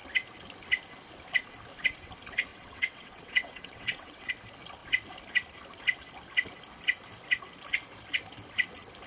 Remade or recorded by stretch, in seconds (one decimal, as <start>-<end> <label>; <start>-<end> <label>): 0.0-2.5 recorded; 2.5-4.3 remade; 4.3-9.1 recorded